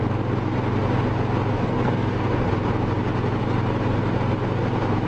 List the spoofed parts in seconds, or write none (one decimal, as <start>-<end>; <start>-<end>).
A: 1.5-2.5